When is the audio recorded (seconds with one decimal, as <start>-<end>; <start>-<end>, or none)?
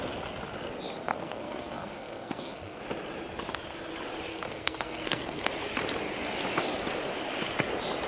0.0-1.0; 2.8-4.3; 5.5-8.1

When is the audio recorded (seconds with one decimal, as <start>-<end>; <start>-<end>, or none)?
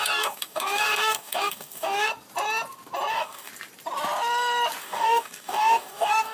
2.1-3.1; 3.5-4.8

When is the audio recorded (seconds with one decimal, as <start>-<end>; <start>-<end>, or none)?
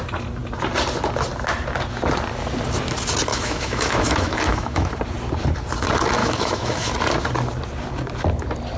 0.0-3.3; 4.9-6.2; 6.9-8.8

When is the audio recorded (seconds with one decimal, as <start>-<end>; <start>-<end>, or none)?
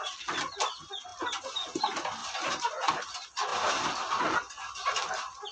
0.0-2.2; 2.9-5.5